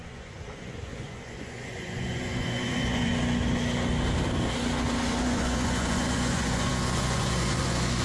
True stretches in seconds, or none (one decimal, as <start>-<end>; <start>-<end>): 3.1-5.2